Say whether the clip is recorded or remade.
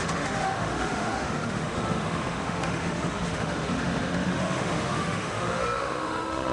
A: remade